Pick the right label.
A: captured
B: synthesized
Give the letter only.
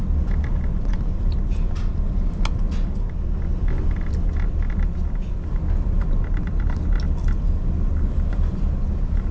A